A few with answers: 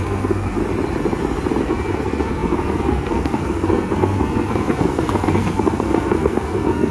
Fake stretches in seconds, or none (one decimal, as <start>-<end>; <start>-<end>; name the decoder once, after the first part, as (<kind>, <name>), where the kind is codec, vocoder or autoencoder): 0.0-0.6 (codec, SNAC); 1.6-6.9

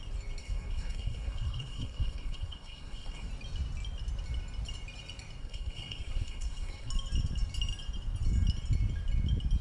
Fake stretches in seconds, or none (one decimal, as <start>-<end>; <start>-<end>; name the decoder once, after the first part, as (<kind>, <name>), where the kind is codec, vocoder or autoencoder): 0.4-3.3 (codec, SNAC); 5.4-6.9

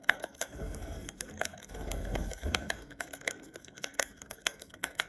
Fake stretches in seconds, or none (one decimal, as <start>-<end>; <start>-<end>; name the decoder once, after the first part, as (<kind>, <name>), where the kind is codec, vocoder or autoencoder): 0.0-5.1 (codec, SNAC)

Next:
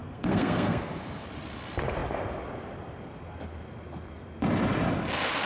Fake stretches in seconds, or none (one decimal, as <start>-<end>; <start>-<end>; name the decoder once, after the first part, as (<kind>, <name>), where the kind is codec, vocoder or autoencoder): 0.0-0.9 (codec, SNAC)

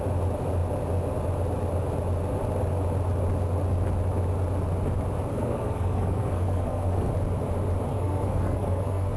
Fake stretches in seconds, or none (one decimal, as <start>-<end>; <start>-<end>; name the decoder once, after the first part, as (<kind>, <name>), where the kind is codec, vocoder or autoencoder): 5.3-7.1 (codec, SNAC); 7.9-9.2

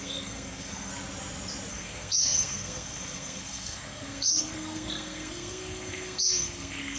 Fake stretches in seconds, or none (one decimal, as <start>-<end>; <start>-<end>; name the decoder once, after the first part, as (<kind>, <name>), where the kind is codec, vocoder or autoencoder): 0.0-0.9 (codec, SNAC); 1.7-7.0

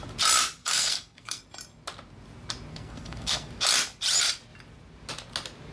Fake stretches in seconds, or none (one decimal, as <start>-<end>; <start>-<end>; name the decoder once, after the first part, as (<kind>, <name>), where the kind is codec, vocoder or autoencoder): 0.6-1.4 (codec, SNAC); 2.7-3.5